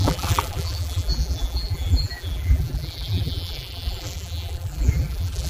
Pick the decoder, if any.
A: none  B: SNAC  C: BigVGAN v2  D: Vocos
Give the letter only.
C